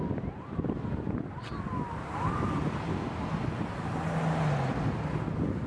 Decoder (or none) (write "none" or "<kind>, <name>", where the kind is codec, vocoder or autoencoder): none